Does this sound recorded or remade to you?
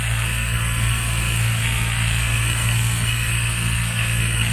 remade